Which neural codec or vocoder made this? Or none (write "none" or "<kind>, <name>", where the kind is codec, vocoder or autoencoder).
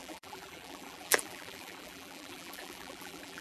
vocoder, BigVGAN v2